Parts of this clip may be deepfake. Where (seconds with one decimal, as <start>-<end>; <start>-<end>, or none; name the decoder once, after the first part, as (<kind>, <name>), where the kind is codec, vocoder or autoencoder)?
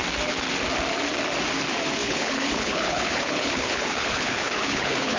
2.0-5.2 (codec, HILCodec)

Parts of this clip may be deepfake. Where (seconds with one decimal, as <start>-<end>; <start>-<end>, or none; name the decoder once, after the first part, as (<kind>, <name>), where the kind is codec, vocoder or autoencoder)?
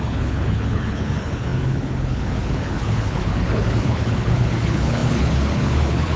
0.0-6.2 (codec, HILCodec)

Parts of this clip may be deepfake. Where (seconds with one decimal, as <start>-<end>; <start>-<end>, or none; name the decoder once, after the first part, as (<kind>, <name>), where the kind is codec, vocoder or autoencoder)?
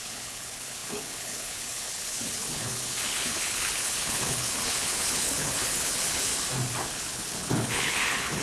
0.0-6.3 (codec, HILCodec); 6.8-8.4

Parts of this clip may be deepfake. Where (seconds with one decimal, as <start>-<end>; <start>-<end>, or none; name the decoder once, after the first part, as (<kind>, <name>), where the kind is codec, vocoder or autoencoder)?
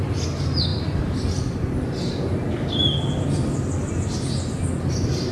none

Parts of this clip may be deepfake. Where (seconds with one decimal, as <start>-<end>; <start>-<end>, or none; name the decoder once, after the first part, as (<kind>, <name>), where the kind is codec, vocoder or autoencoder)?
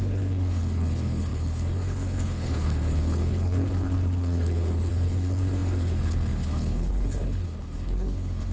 0.0-8.5 (codec, HILCodec)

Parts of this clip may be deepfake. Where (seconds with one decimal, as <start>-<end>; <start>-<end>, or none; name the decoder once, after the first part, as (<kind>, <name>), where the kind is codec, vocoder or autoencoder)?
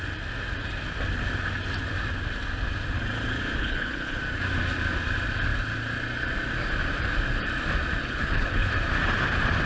3.6-4.2 (codec, HILCodec); 8.0-8.7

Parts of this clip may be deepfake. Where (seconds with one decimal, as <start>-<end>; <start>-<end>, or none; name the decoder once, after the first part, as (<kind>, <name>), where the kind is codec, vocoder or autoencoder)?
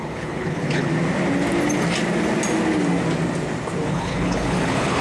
0.0-0.9 (codec, HILCodec); 3.9-5.0